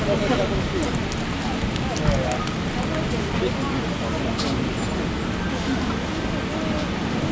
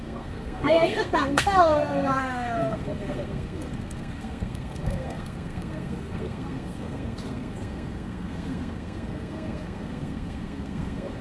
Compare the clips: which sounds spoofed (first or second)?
second